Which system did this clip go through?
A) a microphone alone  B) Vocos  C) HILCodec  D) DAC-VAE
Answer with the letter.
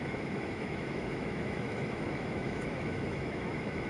D